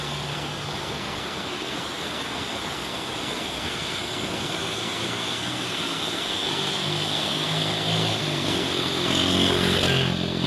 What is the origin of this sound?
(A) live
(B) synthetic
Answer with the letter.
B